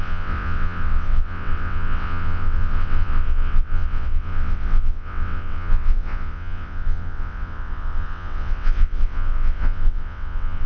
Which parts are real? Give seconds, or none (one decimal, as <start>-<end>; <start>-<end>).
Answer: none